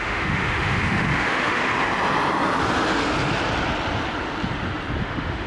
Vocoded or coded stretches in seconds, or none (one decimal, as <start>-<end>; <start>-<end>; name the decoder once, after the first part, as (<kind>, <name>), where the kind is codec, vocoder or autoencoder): 0.0-1.7 (autoencoder, DAC-VAE); 5.0-5.5